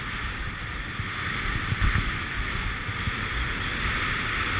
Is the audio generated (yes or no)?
no